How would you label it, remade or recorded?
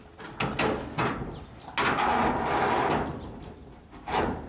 recorded